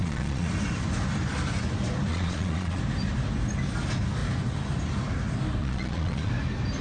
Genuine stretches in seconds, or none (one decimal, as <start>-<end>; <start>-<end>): 0.5-2.1; 2.8-5.6; 6.3-6.8